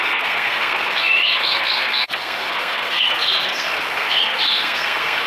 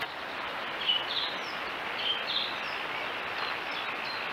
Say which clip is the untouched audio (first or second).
second